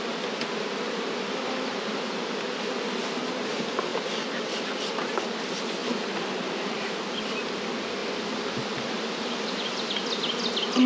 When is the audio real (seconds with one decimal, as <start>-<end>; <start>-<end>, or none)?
0.0-5.8; 6.9-10.9